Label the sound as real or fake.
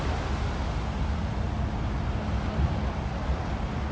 real